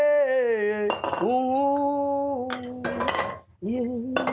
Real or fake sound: real